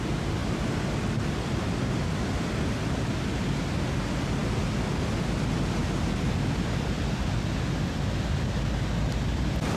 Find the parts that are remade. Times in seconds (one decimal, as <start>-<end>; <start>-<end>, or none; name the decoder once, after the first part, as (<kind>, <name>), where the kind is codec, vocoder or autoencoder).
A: none